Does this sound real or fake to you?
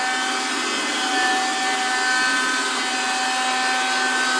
real